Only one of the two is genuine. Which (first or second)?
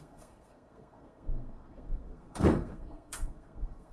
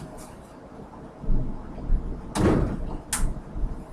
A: second